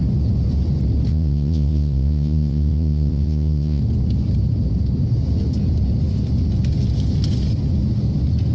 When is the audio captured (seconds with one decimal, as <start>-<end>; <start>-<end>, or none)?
0.0-1.1; 3.8-8.5